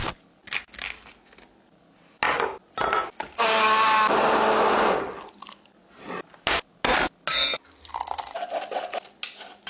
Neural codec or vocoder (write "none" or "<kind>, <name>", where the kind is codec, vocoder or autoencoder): none